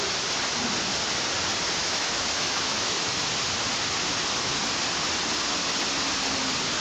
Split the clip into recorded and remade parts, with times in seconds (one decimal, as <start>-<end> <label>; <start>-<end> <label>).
0.0-1.8 recorded; 1.8-3.2 remade; 3.2-6.8 recorded